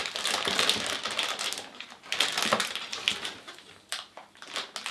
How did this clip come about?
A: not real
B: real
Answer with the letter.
B